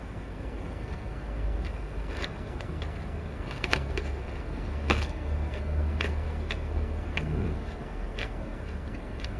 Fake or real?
fake